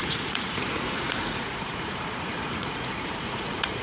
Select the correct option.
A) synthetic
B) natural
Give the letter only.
A